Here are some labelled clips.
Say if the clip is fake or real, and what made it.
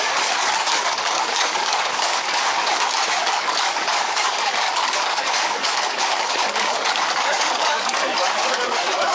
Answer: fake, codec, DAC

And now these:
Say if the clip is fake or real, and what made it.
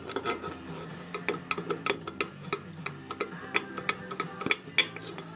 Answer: real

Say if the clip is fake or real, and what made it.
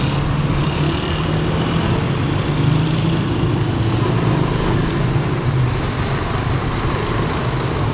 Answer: real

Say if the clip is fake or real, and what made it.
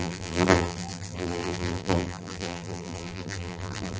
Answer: fake, vocoder, BigVGAN v2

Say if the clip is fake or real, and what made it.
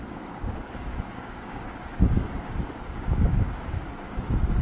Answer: fake, codec, DAC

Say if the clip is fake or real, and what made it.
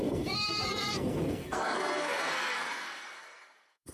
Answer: fake, codec, SNAC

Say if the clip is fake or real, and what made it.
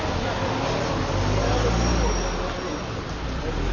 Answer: real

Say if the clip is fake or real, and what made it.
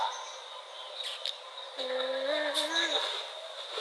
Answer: real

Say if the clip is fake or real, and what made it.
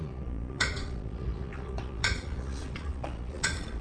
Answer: fake, vocoder, Vocos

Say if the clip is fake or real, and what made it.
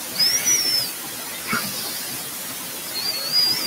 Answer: real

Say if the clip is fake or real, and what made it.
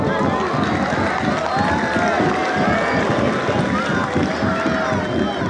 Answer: real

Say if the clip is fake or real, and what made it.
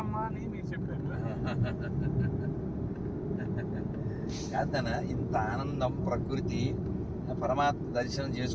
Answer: real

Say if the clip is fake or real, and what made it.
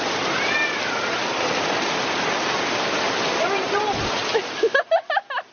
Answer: real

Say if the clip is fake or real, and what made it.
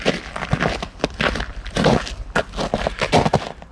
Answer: real